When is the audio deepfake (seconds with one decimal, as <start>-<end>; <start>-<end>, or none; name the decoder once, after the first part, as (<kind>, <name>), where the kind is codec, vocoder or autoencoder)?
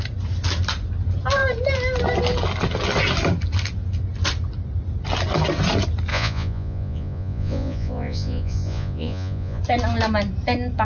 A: 6.1-9.6 (vocoder, Vocos)